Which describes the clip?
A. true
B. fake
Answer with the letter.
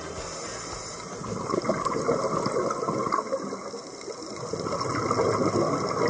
A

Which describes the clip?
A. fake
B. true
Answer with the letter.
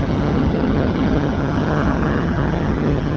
A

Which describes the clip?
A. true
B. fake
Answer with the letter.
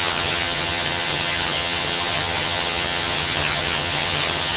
B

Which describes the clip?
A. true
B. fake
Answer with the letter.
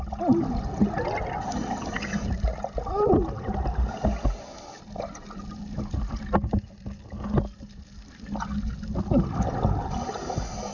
A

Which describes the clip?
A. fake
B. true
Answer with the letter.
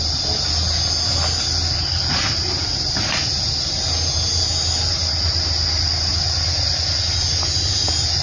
B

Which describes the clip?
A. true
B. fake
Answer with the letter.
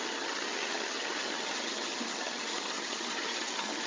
B